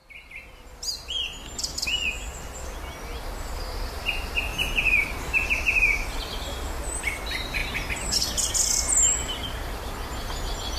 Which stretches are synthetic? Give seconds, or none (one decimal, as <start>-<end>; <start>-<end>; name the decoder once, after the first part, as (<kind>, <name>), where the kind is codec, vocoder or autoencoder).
0.0-1.6 (vocoder, BigVGAN v2); 4.5-6.9